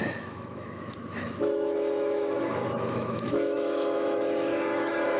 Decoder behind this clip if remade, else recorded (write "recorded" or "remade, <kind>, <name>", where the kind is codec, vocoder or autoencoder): remade, autoencoder, DAC-VAE